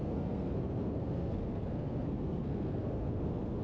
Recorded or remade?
remade